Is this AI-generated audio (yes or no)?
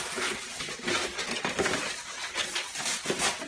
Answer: no